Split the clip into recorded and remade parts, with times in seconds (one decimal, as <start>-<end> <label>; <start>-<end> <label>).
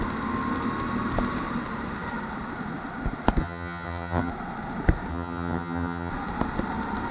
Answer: 0.0-3.4 recorded; 3.4-4.3 remade; 4.3-5.1 recorded; 5.1-6.1 remade; 6.1-7.1 recorded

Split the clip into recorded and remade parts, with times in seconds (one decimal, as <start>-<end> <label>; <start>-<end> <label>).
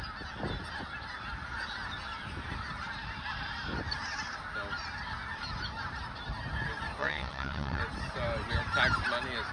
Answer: 0.0-7.0 recorded; 7.0-7.8 remade; 7.8-9.5 recorded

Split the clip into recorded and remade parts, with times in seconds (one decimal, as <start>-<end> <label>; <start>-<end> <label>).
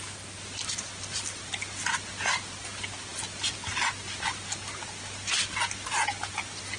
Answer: 0.0-6.8 recorded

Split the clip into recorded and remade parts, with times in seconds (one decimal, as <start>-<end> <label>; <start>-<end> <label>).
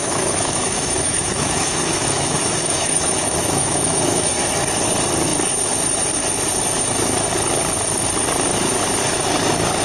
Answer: 0.0-4.3 remade; 4.3-9.8 recorded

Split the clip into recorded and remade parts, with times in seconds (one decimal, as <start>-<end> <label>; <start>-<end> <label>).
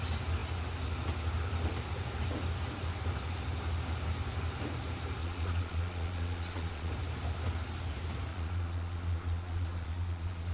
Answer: 0.0-5.2 recorded; 5.2-6.9 remade; 6.9-8.3 recorded; 8.3-10.5 remade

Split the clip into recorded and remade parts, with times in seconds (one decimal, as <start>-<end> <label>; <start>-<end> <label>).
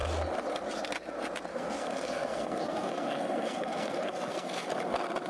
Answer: 0.0-1.5 recorded; 1.5-4.7 remade; 4.7-5.3 recorded